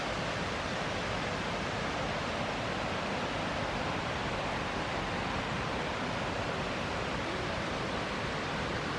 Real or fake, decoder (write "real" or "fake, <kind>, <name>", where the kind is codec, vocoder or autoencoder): fake, vocoder, BigVGAN v2